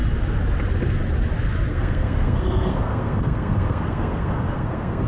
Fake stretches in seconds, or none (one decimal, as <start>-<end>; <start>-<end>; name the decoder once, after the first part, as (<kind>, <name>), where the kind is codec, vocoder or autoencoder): 1.7-5.1 (codec, SNAC)